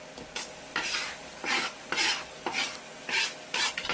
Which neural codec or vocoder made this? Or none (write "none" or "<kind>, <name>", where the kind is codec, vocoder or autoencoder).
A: none